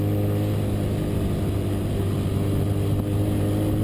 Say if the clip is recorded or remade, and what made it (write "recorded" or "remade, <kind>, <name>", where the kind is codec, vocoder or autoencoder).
recorded